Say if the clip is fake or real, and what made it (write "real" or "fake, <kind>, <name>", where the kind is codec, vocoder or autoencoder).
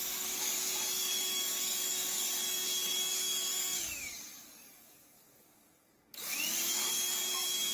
fake, codec, DAC